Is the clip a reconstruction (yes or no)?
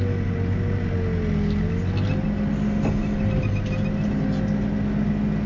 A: no